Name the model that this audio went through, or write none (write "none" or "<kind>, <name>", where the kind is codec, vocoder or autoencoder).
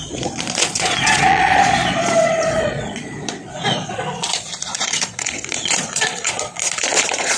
vocoder, Vocos